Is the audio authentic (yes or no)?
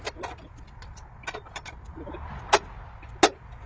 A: yes